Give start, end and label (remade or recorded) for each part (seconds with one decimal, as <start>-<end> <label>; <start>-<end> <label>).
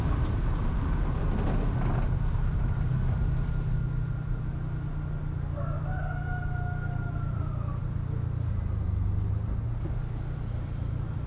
0.0-11.3 recorded